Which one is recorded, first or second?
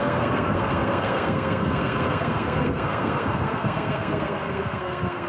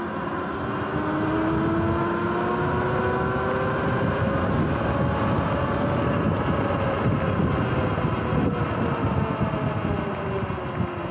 second